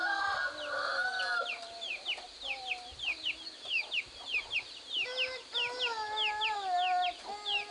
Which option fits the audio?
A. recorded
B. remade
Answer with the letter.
A